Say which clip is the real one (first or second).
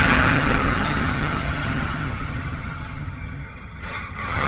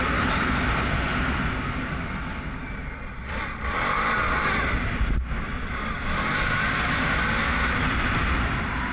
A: second